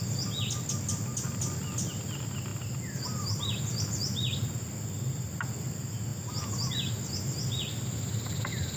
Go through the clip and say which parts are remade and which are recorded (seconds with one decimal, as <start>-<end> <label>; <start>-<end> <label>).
0.0-8.8 recorded